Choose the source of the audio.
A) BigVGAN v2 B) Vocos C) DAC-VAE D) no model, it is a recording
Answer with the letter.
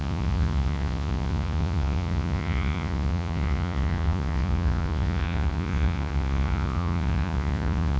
B